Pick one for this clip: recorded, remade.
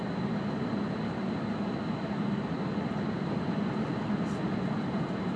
recorded